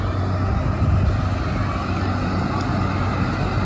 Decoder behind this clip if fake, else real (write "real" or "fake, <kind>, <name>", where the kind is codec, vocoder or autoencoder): real